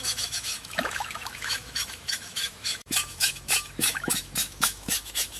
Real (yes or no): no